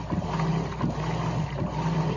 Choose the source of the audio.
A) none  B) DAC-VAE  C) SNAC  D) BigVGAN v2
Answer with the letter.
A